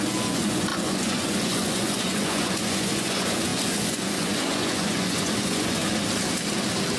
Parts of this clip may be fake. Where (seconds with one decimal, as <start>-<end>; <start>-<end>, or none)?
0.0-5.8

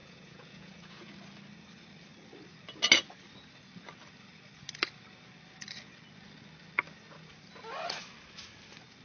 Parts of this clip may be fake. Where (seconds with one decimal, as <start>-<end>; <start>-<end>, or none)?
0.0-1.1

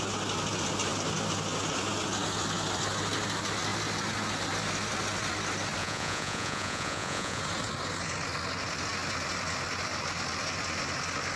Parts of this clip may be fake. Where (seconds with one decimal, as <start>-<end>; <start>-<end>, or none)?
5.8-7.4

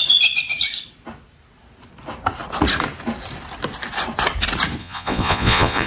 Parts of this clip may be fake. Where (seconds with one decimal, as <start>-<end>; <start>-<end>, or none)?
4.8-5.9

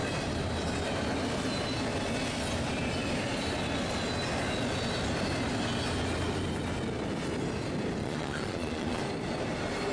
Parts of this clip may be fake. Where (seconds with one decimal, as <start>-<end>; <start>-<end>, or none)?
8.0-9.0

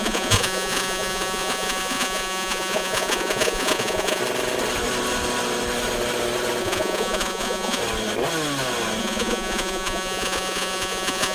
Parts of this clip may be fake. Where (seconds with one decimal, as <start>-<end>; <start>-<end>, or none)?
0.0-4.2; 6.6-7.8; 9.0-11.3

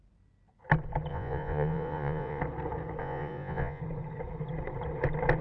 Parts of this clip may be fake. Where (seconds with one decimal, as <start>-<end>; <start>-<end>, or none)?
1.1-2.4; 3.0-3.8